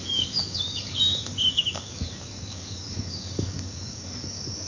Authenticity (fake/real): fake